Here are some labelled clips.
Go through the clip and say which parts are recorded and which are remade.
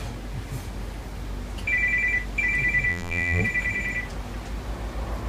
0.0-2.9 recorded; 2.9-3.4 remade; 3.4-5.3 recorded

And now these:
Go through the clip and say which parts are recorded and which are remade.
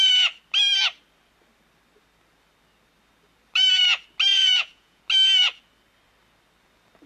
0.0-4.3 recorded; 4.3-5.0 remade; 5.0-7.1 recorded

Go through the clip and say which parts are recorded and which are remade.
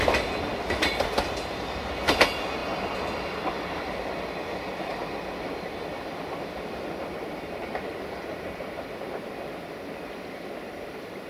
0.0-11.3 recorded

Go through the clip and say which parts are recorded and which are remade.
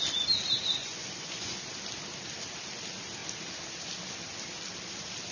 0.0-0.8 recorded; 0.8-1.6 remade; 1.6-5.3 recorded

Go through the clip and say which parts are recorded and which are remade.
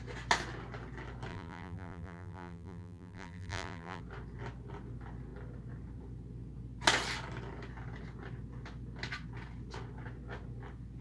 0.0-1.3 recorded; 1.3-4.0 remade; 4.0-11.0 recorded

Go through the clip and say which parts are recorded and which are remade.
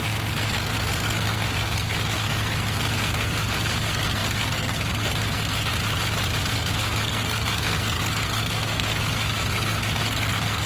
0.0-5.7 remade; 5.7-6.4 recorded; 6.4-10.7 remade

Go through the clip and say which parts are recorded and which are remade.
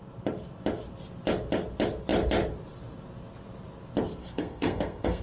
0.0-4.2 recorded; 4.2-5.2 remade